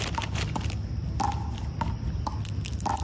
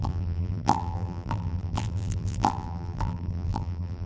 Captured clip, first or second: first